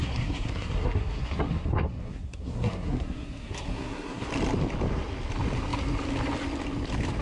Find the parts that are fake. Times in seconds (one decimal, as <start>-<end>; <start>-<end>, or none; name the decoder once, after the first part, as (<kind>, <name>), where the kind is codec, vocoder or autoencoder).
0.0-4.3 (codec, SNAC)